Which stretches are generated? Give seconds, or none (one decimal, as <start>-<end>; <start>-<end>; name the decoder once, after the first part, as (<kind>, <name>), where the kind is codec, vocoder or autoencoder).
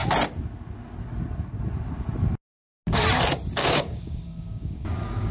3.6-5.3 (codec, DAC)